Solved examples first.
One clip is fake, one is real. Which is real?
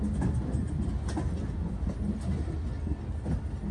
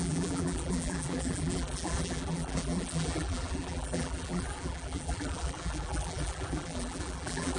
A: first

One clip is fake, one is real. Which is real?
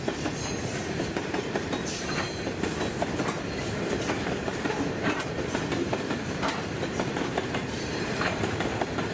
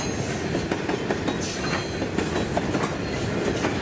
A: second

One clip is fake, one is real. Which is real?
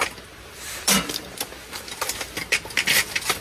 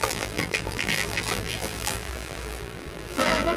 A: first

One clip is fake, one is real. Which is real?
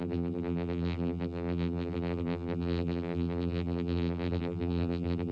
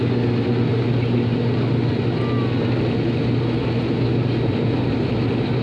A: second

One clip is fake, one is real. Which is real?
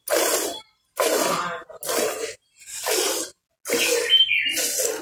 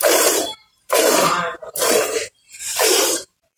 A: first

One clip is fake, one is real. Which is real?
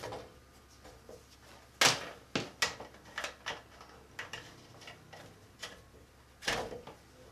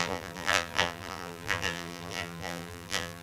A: first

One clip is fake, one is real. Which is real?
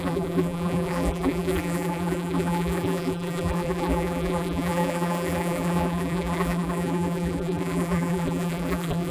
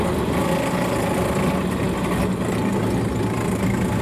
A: second